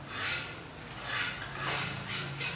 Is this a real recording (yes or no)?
yes